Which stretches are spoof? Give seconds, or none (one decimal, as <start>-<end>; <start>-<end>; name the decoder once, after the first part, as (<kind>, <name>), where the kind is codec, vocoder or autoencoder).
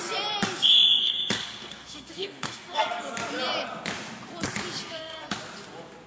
1.0-3.0 (codec, SNAC); 4.8-5.4